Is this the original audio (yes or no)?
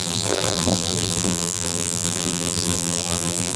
no